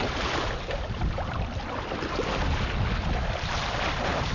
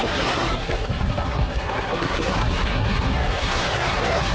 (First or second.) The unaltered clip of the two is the first